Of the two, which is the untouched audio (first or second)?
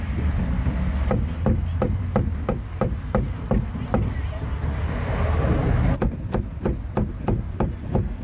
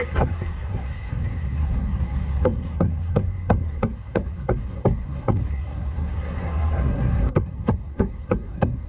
first